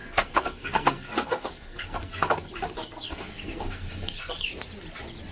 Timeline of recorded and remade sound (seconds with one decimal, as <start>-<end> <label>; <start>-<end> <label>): 0.0-4.5 remade; 4.5-5.3 recorded